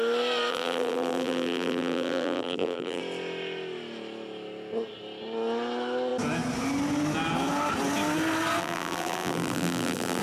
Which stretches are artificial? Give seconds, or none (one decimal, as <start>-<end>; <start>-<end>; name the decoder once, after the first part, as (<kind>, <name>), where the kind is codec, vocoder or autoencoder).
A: 0.5-3.0 (vocoder, BigVGAN v2); 8.6-10.2